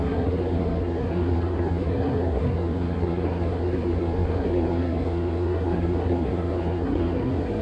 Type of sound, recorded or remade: remade